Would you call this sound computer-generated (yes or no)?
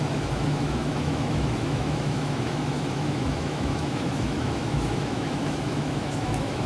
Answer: yes